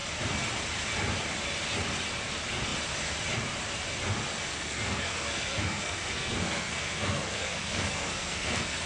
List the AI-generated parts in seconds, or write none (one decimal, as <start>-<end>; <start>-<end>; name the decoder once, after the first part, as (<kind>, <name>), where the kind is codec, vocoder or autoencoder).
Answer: 4.5-8.9 (codec, SNAC)